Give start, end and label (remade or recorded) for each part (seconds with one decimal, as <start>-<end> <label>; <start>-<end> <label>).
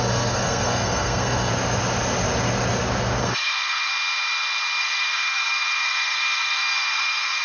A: 0.0-1.5 remade; 1.5-3.2 recorded; 3.2-3.9 remade; 3.9-4.8 recorded; 4.8-7.4 remade